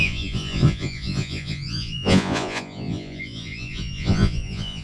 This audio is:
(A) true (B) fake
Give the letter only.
B